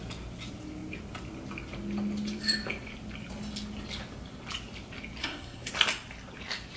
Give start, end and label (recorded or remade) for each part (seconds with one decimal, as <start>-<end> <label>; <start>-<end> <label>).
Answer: 0.0-5.2 recorded; 5.2-5.7 remade; 5.7-6.8 recorded